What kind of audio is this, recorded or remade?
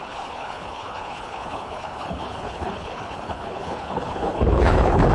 remade